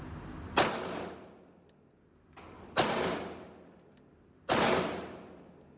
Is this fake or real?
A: real